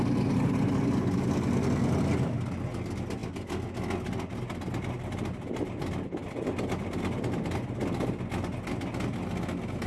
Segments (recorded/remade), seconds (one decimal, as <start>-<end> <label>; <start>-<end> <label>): 0.0-9.9 recorded